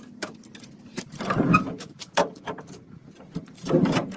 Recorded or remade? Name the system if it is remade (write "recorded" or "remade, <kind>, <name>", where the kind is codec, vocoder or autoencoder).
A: remade, vocoder, BigVGAN v2